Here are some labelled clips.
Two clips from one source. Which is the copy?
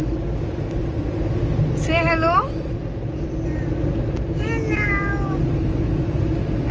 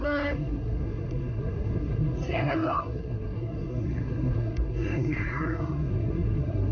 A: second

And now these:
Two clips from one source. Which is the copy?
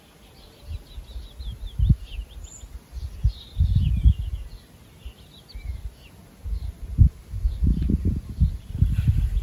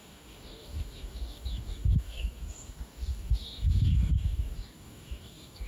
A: second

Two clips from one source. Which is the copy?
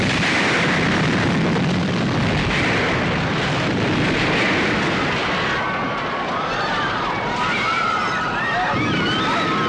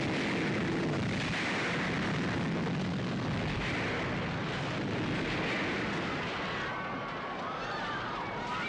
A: first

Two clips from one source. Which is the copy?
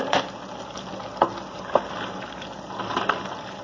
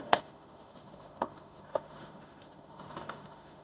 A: second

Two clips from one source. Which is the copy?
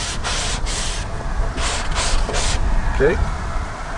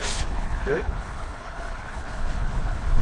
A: second